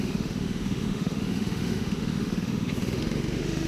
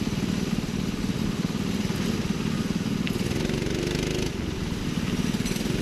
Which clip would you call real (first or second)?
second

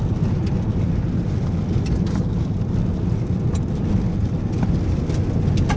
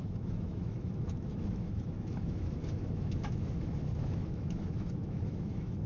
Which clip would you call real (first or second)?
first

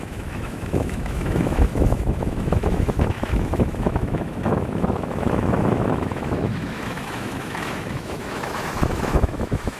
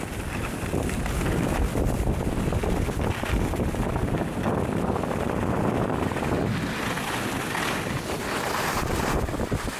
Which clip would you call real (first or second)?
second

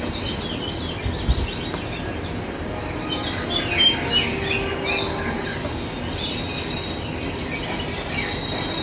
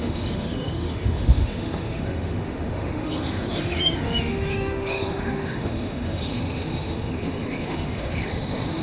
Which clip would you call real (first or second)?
first